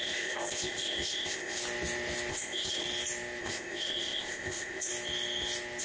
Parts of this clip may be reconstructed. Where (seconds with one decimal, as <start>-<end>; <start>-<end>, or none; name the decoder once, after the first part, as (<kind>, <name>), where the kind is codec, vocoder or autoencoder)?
0.0-1.6 (codec, ZipCodec); 2.3-2.8; 3.4-4.9